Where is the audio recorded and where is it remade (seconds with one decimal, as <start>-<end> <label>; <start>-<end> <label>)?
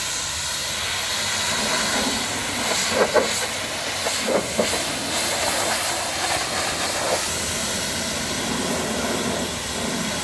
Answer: 0.0-10.2 recorded